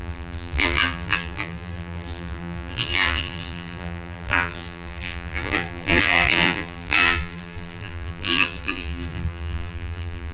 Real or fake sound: fake